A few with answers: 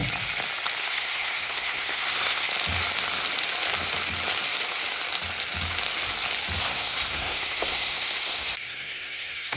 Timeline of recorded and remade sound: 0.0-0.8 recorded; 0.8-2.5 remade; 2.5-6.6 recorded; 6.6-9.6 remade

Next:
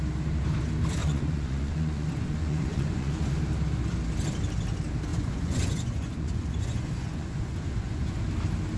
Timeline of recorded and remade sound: 0.0-1.0 recorded; 1.0-3.3 remade; 3.3-5.1 recorded; 5.1-8.2 remade; 8.2-8.8 recorded

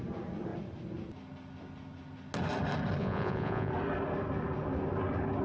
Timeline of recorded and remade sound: 0.0-3.0 recorded; 3.0-3.7 remade; 3.7-5.4 recorded

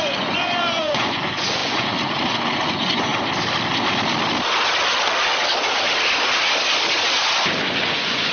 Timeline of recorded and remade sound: 0.0-3.1 remade; 3.1-7.6 recorded; 7.6-8.3 remade

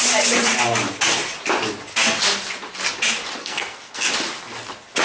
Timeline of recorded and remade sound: 0.0-3.4 recorded; 3.4-4.1 remade; 4.1-5.0 recorded

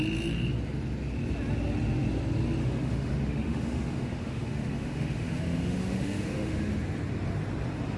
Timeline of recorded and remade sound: 0.0-2.6 recorded; 2.6-6.7 remade; 6.7-8.0 recorded

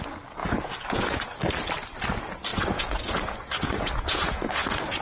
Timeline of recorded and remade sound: 0.0-0.4 recorded; 0.4-1.2 remade; 1.2-2.5 recorded; 2.5-5.0 remade